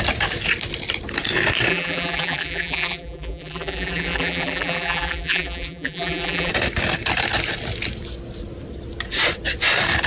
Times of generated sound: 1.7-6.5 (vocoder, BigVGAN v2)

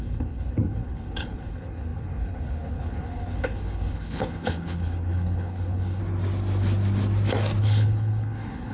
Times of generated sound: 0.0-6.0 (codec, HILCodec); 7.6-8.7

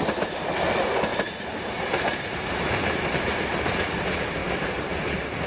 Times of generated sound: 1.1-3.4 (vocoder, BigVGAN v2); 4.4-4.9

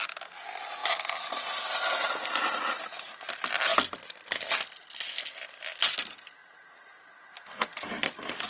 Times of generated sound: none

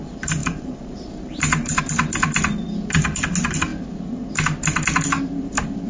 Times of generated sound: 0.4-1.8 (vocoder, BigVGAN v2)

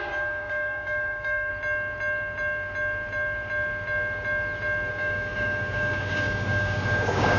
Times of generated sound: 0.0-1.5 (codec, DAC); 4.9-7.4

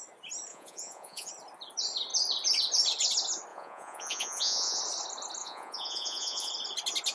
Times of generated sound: 0.5-1.3 (vocoder, Vocos); 3.5-4.8; 5.4-6.5